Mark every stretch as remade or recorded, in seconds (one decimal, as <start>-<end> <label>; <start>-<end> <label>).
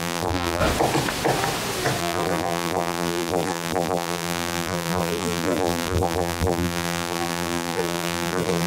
0.0-0.6 remade; 0.6-2.0 recorded; 2.0-8.7 remade